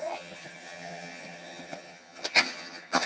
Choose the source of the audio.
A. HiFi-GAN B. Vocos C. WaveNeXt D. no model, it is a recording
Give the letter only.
A